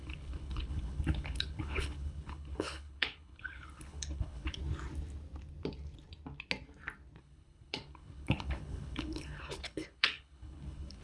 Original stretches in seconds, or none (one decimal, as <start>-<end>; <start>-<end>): 4.6-7.2